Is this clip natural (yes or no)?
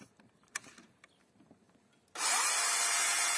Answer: yes